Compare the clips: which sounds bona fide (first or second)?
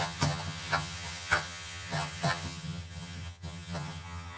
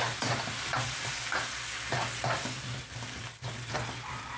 second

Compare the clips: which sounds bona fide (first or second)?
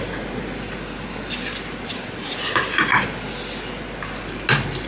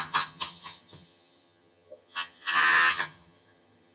first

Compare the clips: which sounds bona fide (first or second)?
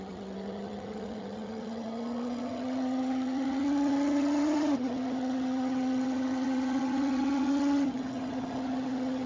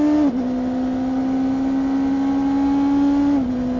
second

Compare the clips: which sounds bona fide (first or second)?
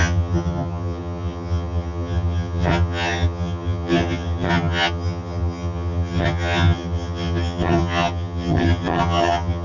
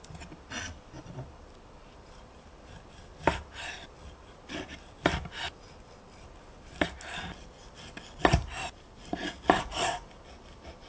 second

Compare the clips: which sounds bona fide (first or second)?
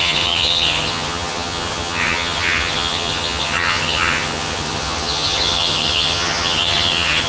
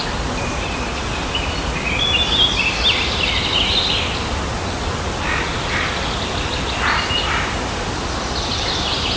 second